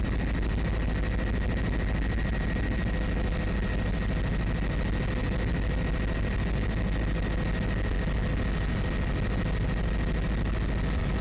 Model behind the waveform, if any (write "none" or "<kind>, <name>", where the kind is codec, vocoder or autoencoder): none